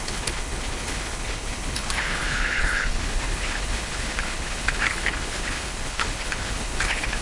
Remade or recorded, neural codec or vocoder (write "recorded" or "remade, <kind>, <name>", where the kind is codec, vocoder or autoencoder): remade, codec, HILCodec